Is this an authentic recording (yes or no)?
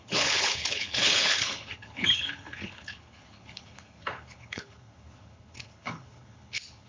no